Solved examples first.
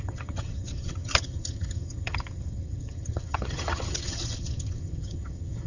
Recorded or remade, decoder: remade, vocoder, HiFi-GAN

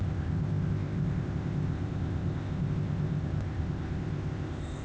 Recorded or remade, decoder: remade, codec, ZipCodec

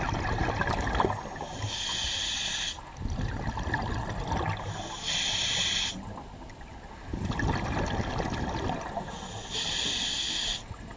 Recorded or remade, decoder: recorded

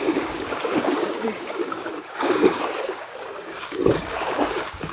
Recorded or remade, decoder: remade, codec, DAC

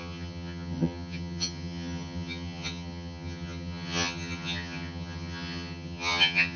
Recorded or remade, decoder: remade, vocoder, HiFi-GAN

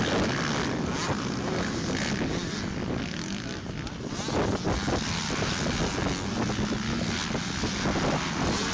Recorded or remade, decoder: recorded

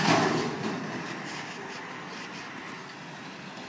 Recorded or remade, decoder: recorded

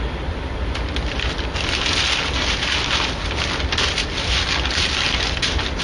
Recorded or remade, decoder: recorded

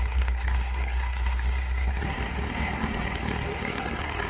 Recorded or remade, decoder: remade, codec, SNAC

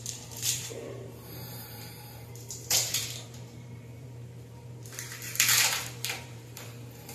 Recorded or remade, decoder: remade, vocoder, BigVGAN v2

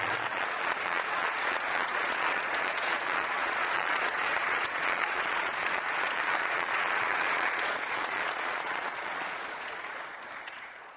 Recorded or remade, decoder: remade, vocoder, Vocos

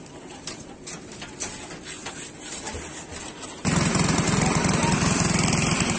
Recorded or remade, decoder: recorded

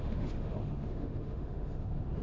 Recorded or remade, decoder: remade, autoencoder, DAC-VAE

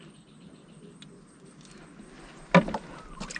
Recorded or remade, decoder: recorded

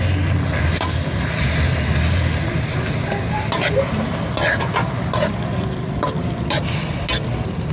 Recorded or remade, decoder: recorded